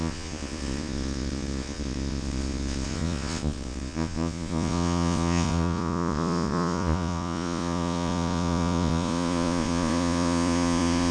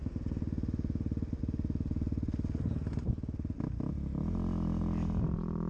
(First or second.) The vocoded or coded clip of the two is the first